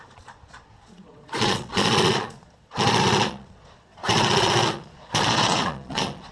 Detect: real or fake fake